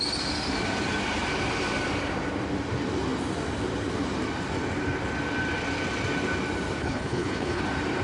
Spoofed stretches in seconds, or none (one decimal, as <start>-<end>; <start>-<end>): 6.8-7.6